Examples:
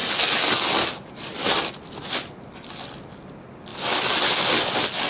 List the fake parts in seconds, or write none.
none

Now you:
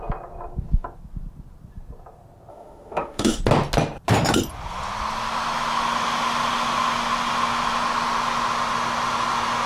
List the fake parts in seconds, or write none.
2.5-3.4 (autoencoder, DAC-VAE)

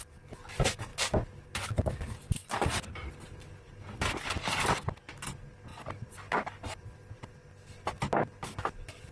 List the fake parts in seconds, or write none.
2.4-5.1 (vocoder, BigVGAN v2); 5.7-7.3

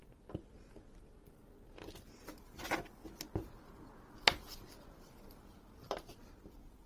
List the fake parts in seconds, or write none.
none

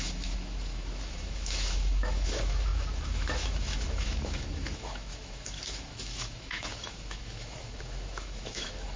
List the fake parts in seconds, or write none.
0.0-9.0 (autoencoder, DAC-VAE)

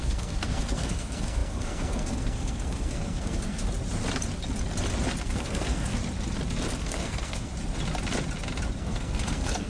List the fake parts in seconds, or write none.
0.0-3.6 (codec, SNAC); 5.2-6.0; 6.8-7.5; 8.8-9.7